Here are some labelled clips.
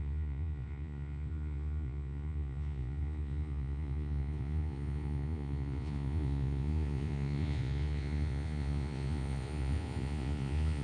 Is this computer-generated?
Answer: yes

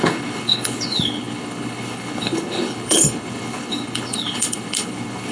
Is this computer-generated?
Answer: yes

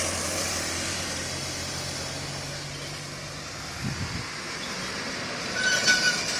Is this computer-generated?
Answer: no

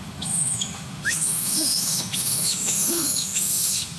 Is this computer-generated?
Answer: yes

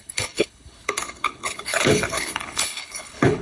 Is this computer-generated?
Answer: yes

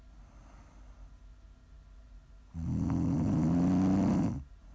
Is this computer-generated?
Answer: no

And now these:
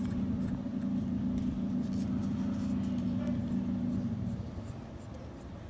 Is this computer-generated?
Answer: no